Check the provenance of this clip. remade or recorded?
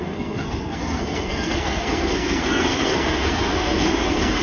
remade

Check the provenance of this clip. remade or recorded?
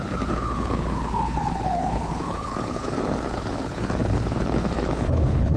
remade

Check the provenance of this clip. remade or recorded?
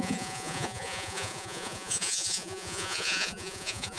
remade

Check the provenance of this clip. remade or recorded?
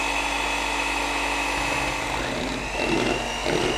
recorded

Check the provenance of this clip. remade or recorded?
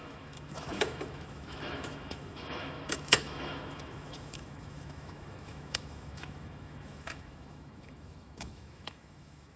remade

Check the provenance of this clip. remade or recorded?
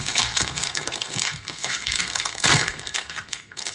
remade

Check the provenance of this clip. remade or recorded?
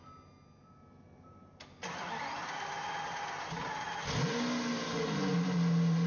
recorded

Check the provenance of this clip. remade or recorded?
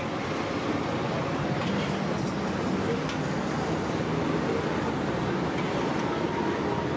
recorded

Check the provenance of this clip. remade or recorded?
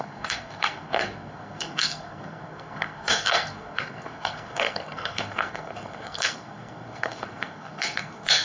remade